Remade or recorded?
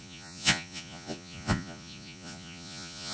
remade